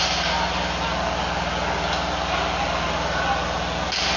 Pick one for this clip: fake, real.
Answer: real